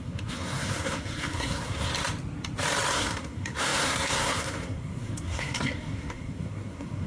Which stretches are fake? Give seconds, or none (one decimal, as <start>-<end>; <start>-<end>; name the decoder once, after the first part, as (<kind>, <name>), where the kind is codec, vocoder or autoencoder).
0.0-1.9 (codec, SNAC); 2.9-7.1